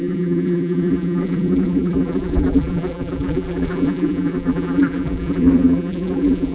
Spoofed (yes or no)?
yes